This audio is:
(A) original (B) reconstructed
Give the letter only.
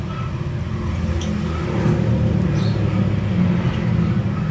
A